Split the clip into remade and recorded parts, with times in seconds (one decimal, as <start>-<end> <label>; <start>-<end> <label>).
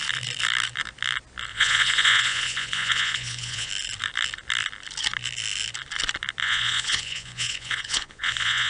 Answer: 0.0-1.5 recorded; 1.5-3.7 remade; 3.7-6.4 recorded; 6.4-8.7 remade